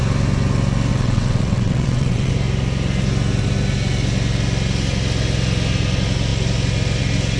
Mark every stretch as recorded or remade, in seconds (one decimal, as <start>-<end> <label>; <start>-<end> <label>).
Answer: 0.0-0.9 recorded; 0.9-2.3 remade; 2.3-7.4 recorded